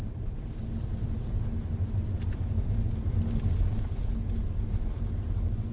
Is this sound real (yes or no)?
yes